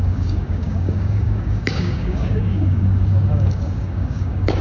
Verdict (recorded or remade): remade